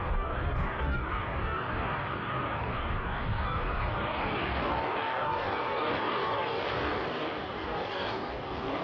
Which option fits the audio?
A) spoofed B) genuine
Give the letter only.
A